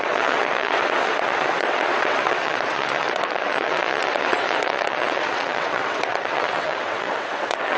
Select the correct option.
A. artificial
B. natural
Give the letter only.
A